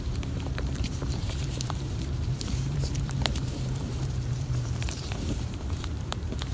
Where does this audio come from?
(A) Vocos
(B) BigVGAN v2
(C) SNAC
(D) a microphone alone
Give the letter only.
B